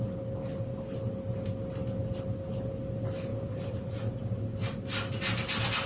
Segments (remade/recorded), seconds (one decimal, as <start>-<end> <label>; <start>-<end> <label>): 0.0-3.3 recorded; 3.3-3.9 remade; 3.9-5.9 recorded